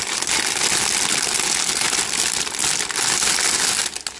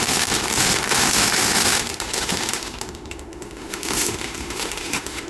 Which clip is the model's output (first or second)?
second